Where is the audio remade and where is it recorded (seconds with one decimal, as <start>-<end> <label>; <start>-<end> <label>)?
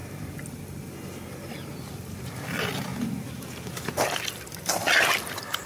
0.0-2.9 remade; 2.9-4.3 recorded; 4.3-5.7 remade